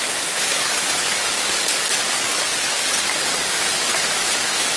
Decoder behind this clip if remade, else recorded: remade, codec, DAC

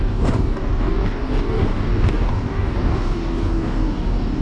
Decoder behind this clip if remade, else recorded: remade, codec, DAC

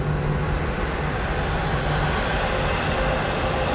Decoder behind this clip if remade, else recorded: recorded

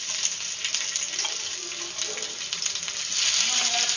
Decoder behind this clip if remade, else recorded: recorded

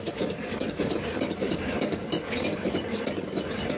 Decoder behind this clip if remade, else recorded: remade, codec, DAC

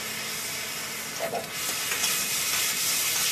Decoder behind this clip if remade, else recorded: recorded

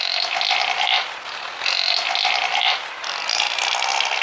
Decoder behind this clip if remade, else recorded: recorded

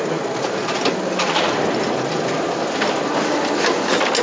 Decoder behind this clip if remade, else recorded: recorded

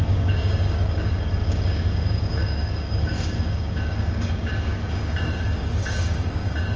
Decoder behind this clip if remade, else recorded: remade, codec, DAC